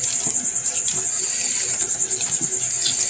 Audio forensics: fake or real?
real